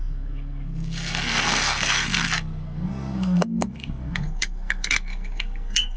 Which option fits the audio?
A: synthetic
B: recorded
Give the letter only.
A